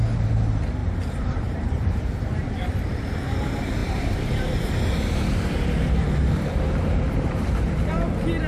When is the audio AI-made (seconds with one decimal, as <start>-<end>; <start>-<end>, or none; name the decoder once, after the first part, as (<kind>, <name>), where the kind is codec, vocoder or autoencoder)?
0.8-2.5 (vocoder, BigVGAN v2); 3.8-7.9